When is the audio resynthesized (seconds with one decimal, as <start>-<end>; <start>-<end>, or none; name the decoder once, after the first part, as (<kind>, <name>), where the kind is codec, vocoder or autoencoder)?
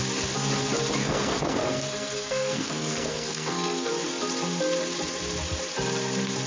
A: 1.0-3.9 (codec, SNAC)